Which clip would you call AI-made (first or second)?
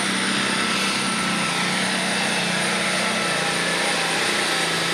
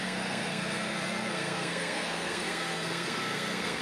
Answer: second